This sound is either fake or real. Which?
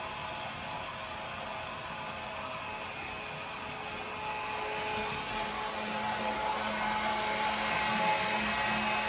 real